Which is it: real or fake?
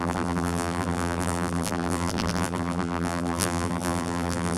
fake